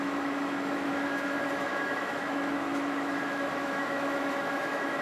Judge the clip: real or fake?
fake